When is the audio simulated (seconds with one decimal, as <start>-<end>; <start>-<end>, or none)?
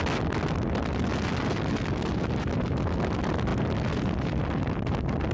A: none